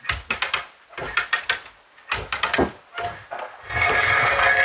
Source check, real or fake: real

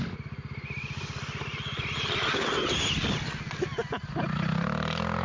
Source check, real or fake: real